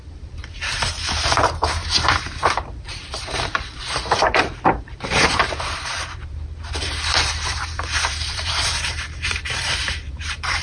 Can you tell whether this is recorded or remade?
remade